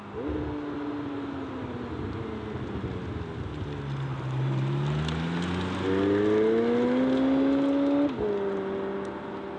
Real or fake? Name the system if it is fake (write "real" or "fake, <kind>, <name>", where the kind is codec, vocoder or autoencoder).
real